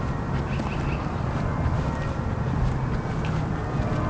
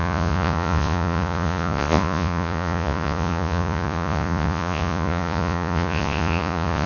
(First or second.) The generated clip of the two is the second